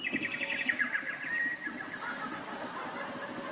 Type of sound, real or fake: real